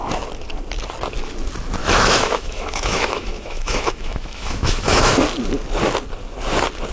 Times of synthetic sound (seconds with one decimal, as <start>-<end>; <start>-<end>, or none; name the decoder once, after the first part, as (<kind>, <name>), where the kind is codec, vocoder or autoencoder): 1.8-5.1 (autoencoder, DAC-VAE)